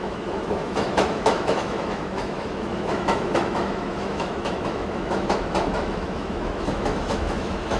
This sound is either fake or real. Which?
fake